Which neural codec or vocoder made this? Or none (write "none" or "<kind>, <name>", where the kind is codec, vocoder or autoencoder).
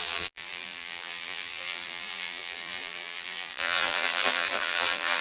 vocoder, BigVGAN v2